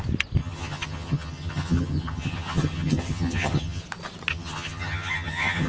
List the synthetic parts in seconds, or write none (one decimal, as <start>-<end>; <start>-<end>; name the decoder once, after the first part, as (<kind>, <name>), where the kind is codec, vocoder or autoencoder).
0.4-3.8 (vocoder, HiFi-GAN); 4.3-5.7